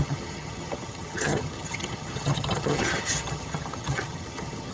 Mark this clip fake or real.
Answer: fake